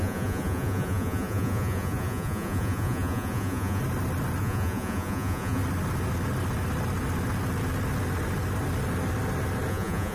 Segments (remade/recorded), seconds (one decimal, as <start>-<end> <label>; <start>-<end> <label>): 0.0-3.8 remade; 3.8-4.4 recorded; 4.4-5.6 remade; 5.6-9.7 recorded; 9.7-10.1 remade